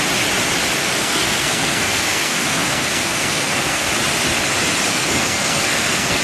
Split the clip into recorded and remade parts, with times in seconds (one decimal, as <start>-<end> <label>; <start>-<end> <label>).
0.0-0.8 recorded; 0.8-3.9 remade; 3.9-4.9 recorded; 4.9-6.2 remade